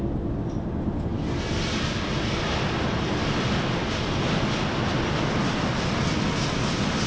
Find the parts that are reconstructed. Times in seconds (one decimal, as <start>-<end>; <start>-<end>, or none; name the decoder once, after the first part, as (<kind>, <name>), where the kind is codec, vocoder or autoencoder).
none